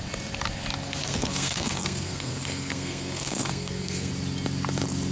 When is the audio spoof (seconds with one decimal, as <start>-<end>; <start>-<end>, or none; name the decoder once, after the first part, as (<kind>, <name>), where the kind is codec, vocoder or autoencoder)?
1.0-4.1 (codec, SNAC)

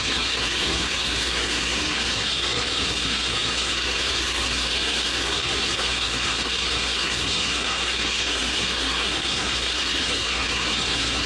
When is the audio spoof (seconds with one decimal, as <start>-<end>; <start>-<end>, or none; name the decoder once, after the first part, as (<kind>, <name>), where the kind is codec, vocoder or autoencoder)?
0.0-11.3 (codec, SNAC)

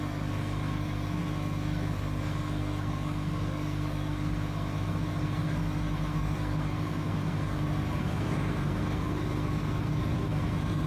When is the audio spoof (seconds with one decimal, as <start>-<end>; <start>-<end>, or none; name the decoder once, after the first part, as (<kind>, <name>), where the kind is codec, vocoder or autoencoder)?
0.0-10.9 (codec, SNAC)

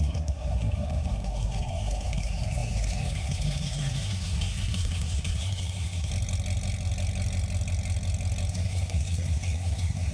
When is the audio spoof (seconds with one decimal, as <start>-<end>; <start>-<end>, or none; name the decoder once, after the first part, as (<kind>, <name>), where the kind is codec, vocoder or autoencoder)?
0.0-6.1 (codec, SNAC); 8.5-10.1

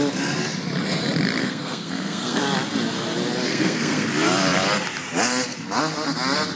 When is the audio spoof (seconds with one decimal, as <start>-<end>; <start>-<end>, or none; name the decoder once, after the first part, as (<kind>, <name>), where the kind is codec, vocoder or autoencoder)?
1.4-2.4 (codec, SNAC); 3.5-4.1